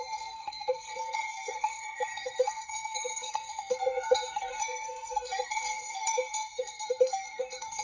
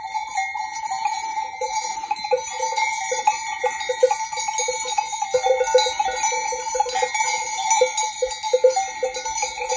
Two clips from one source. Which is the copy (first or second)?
first